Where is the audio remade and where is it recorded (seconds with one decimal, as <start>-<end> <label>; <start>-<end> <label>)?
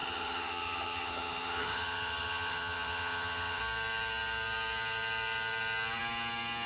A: 0.0-3.6 remade; 3.6-6.7 recorded